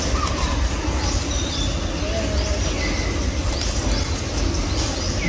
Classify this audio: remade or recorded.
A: recorded